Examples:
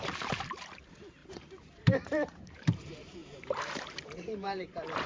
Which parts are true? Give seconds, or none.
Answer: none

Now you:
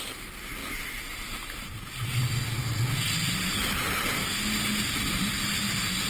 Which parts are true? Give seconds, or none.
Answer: 0.0-6.1

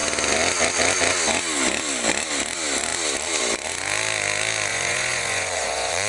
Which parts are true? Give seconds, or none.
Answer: 0.0-4.7

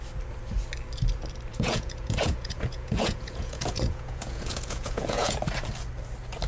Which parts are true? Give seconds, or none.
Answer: 0.0-1.5; 5.4-6.5